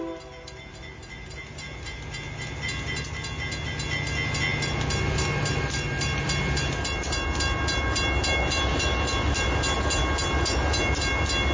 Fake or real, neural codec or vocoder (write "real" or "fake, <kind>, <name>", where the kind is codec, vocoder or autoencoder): real